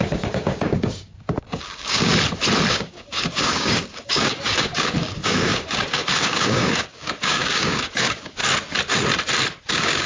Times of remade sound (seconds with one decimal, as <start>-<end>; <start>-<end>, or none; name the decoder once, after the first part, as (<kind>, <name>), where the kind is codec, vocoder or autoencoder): 0.0-2.1 (codec, DAC); 2.7-8.4; 9.7-10.1